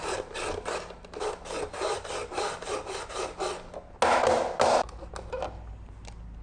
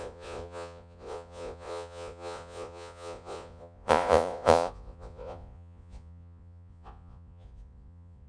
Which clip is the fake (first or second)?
second